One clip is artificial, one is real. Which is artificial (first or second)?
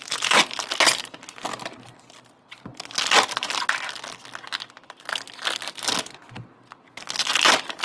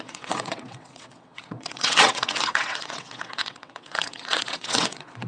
second